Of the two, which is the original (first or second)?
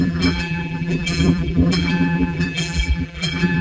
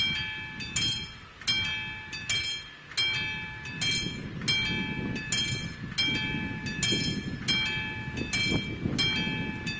second